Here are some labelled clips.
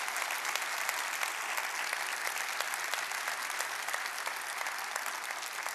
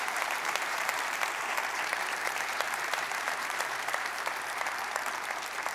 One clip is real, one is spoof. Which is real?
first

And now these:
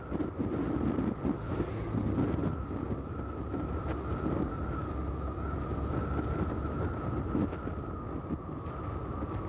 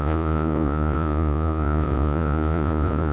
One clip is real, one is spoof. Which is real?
first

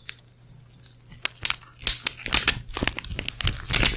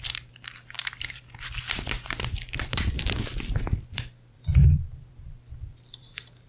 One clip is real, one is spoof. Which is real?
first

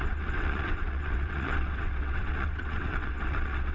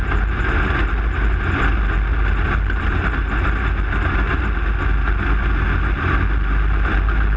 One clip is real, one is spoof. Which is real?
second